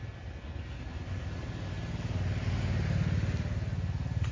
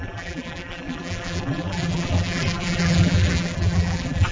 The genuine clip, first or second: first